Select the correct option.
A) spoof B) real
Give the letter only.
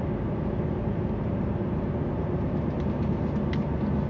B